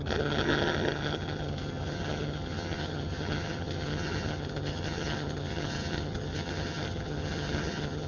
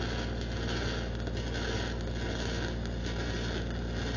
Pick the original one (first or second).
second